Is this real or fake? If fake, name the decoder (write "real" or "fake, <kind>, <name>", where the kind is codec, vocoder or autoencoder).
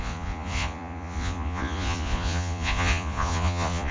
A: fake, vocoder, Vocos